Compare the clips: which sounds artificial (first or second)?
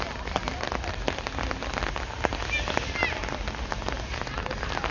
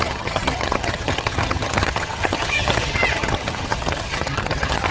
second